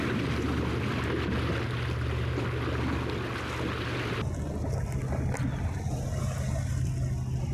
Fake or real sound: real